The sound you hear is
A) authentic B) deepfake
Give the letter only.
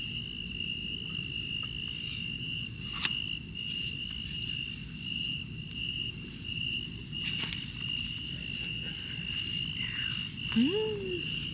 A